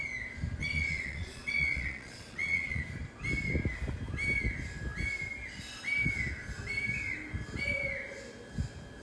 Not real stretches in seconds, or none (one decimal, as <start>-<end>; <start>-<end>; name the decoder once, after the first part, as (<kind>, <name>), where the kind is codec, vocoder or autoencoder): 0.6-2.8 (vocoder, Vocos)